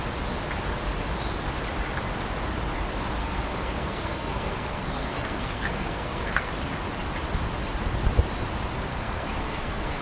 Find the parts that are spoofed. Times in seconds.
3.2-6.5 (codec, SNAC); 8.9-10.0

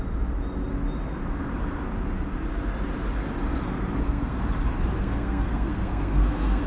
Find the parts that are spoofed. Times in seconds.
4.0-4.4 (codec, SNAC); 5.0-6.7

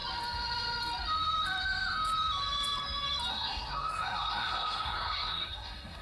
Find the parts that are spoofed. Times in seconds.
3.3-6.0 (codec, SNAC)

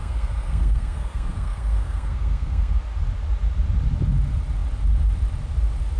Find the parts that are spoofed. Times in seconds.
0.0-2.8 (codec, SNAC)

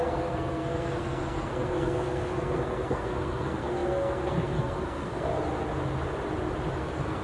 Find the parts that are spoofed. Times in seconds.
0.0-5.3 (codec, SNAC); 6.7-7.2